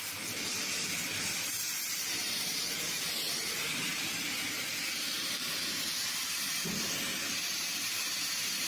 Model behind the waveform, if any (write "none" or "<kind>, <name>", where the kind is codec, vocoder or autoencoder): vocoder, BigVGAN v2